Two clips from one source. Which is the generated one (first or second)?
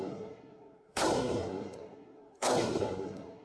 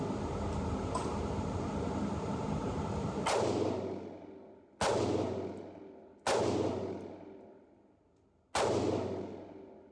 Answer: first